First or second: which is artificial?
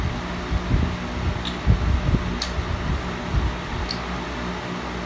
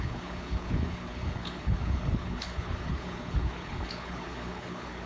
second